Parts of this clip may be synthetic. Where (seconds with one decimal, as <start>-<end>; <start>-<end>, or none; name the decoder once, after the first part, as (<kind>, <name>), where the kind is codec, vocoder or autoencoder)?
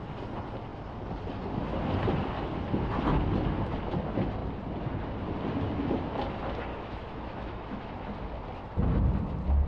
6.7-7.9 (autoencoder, DAC-VAE)